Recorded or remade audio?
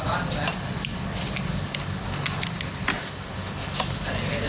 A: recorded